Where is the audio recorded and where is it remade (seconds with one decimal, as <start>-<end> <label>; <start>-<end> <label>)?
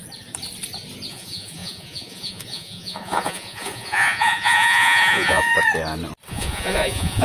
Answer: 0.0-1.1 recorded; 1.1-5.5 remade; 5.5-6.3 recorded; 6.3-7.2 remade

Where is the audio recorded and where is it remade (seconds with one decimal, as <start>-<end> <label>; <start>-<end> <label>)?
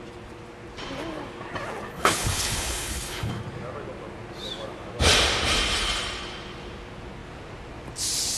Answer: 0.0-1.9 recorded; 1.9-3.3 remade; 3.3-8.4 recorded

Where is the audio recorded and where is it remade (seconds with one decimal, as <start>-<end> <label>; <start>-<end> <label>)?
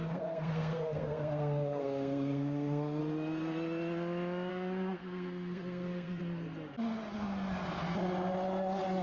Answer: 0.0-3.0 remade; 3.0-4.5 recorded; 4.5-6.2 remade; 6.2-9.0 recorded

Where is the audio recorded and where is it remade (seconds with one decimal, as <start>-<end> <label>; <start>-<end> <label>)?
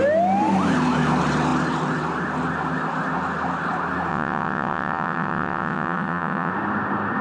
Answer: 0.0-4.1 recorded; 4.1-6.5 remade; 6.5-7.2 recorded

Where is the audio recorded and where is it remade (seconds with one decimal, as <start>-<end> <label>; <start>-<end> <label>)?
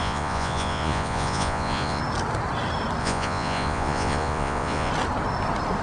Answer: 0.0-2.0 remade; 2.0-3.0 recorded; 3.0-4.9 remade; 4.9-5.8 recorded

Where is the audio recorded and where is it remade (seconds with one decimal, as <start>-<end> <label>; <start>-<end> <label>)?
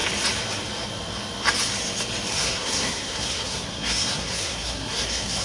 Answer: 0.0-2.3 recorded; 2.3-5.4 remade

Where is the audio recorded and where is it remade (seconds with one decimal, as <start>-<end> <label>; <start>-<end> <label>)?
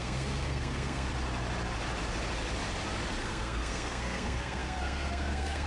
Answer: 0.0-1.1 remade; 1.1-3.2 recorded; 3.2-5.7 remade